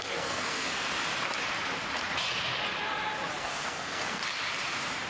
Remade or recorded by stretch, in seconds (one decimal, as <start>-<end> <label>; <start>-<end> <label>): 0.0-0.9 remade; 0.9-3.4 recorded; 3.4-4.2 remade; 4.2-5.1 recorded